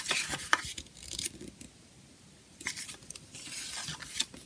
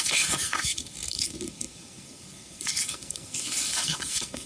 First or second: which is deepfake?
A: second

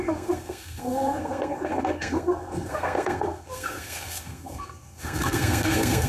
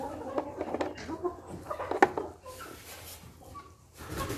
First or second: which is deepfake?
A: first